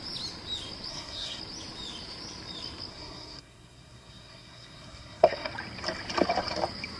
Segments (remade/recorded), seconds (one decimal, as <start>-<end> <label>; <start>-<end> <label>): 0.0-0.9 recorded; 0.9-1.4 remade; 1.4-2.9 recorded; 2.9-5.5 remade; 5.5-7.0 recorded